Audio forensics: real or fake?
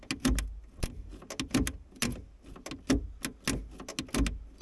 real